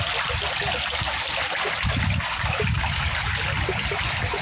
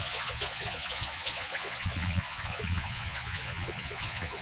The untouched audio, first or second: first